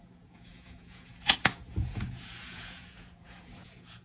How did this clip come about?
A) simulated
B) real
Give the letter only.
A